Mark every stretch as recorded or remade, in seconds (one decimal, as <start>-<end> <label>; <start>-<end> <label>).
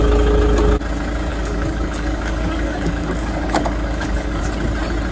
0.0-1.3 recorded; 1.3-4.4 remade; 4.4-5.1 recorded